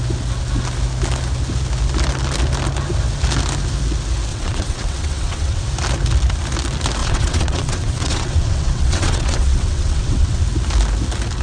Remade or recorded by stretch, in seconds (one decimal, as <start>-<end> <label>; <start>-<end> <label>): 0.0-4.3 recorded; 4.3-5.6 remade; 5.6-7.0 recorded; 7.0-10.4 remade; 10.4-11.4 recorded